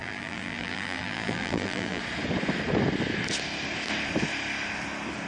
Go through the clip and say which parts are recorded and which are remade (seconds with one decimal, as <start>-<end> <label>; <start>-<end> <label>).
0.0-2.0 remade; 2.0-5.3 recorded